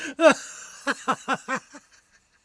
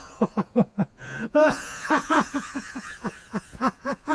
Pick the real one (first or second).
first